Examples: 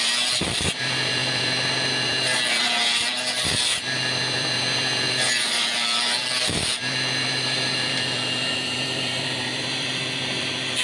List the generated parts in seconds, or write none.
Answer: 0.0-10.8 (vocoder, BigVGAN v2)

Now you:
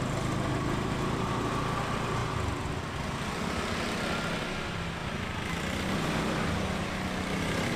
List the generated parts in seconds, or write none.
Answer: none

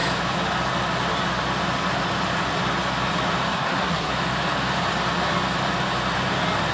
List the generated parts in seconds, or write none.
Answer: 3.5-4.1 (codec, SNAC)

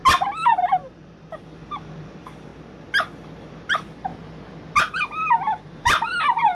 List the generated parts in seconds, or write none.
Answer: 0.6-2.5 (vocoder, BigVGAN v2); 3.5-4.1; 4.8-6.5

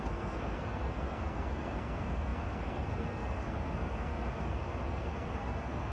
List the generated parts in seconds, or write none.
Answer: 0.0-5.9 (codec, SNAC)